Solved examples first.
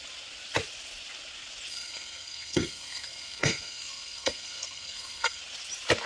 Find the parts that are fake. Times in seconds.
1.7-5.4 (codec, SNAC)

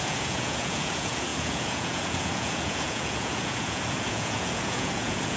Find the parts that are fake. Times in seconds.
0.0-5.4 (vocoder, Vocos)

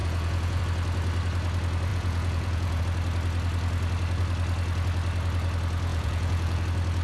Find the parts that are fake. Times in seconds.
0.0-0.6 (vocoder, Vocos); 1.9-2.8; 5.9-6.6

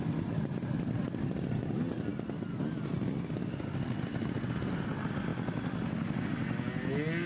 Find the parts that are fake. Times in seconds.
none

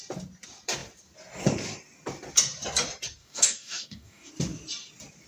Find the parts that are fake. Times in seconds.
3.2-4.3 (codec, DAC)